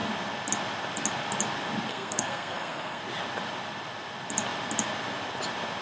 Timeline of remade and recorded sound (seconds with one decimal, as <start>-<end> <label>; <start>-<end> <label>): 0.0-1.9 recorded; 1.9-3.0 remade; 3.0-5.8 recorded